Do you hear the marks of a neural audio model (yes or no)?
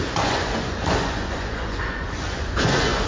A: yes